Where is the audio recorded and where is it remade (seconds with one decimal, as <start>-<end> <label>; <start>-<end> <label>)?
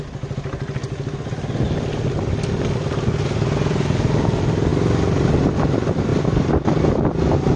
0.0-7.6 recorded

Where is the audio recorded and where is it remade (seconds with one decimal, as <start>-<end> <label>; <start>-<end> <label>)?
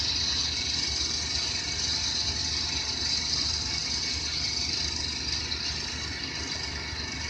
0.0-7.3 recorded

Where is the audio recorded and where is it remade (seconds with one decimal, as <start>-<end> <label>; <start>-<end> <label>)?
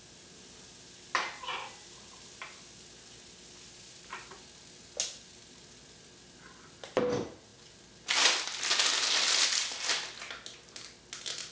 0.0-11.5 recorded